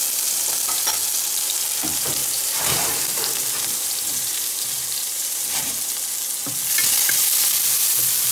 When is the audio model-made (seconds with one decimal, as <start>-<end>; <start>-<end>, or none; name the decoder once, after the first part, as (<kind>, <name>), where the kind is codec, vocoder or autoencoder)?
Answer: 2.2-5.9 (vocoder, BigVGAN v2)